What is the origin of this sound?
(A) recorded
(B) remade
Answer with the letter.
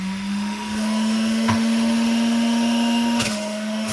B